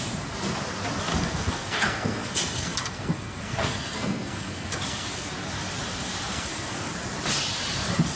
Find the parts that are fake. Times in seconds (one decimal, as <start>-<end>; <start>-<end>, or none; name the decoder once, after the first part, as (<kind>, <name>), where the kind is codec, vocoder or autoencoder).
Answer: 1.1-5.3 (codec, SNAC); 6.3-6.9